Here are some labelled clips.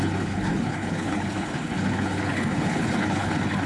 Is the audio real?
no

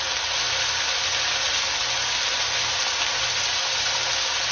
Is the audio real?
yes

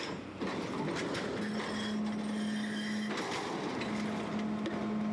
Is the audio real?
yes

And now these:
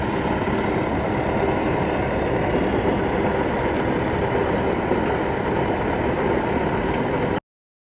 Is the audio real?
yes